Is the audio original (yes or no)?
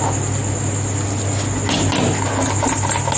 yes